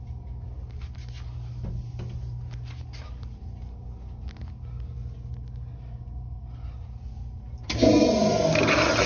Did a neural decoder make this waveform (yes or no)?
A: no